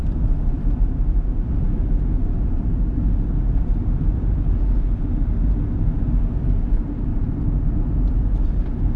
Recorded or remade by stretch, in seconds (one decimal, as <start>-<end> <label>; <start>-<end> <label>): 0.0-4.6 remade; 4.6-7.1 recorded; 7.1-9.0 remade